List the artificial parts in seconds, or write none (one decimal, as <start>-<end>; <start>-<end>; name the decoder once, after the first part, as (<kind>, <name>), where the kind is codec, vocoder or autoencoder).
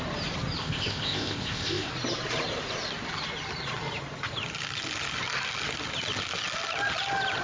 0.6-1.9 (codec, ZipCodec)